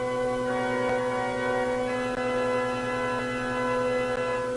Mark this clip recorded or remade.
recorded